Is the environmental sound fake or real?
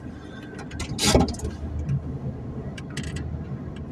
real